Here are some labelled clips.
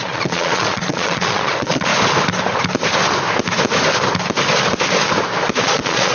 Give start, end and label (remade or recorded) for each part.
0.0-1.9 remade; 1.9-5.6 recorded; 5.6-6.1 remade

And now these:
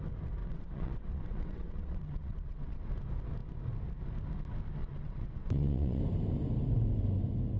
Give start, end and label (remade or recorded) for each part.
0.0-0.4 recorded; 0.4-2.9 remade; 2.9-4.8 recorded; 4.8-6.0 remade; 6.0-7.6 recorded

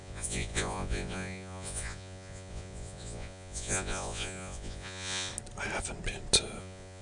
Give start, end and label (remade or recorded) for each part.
0.0-5.3 remade; 5.3-6.6 recorded; 6.6-7.0 remade

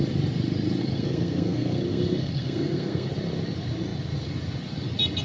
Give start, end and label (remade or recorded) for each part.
0.0-0.8 recorded; 0.8-3.1 remade; 3.1-5.2 recorded

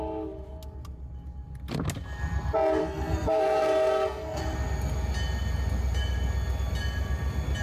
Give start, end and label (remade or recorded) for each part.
0.0-2.8 recorded; 2.8-4.4 remade; 4.4-7.6 recorded

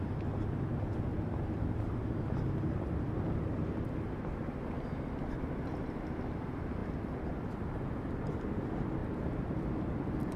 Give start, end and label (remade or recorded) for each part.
0.0-1.1 recorded; 1.1-2.0 remade; 2.0-10.4 recorded

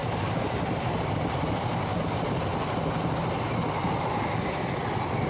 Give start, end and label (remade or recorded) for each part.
0.0-2.5 remade; 2.5-4.4 recorded; 4.4-5.3 remade